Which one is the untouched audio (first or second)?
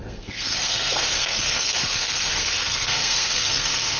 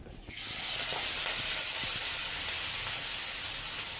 second